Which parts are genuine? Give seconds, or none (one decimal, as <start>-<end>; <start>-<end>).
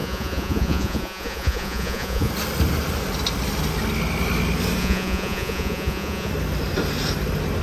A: 2.3-4.8; 6.3-7.6